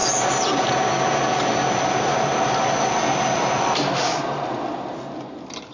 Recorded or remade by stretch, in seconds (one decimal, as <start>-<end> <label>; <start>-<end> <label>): 0.0-5.7 recorded